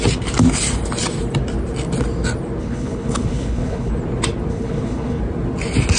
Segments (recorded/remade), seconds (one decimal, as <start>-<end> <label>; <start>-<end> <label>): 0.0-2.6 recorded; 2.6-3.9 remade; 3.9-4.5 recorded; 4.5-5.2 remade; 5.2-6.0 recorded